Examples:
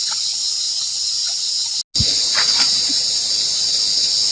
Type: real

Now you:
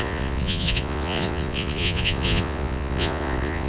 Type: fake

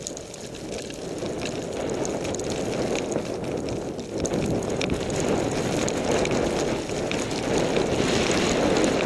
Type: real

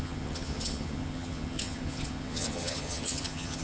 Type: fake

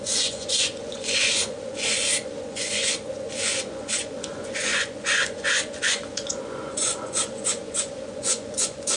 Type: fake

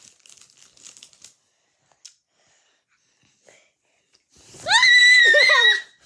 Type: real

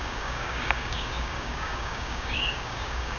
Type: fake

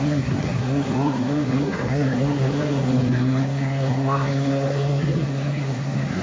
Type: fake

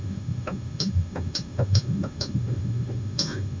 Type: fake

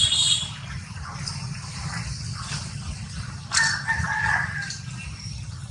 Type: real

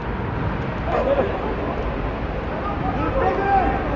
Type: real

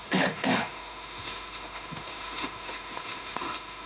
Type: fake